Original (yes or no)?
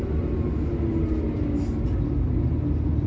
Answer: yes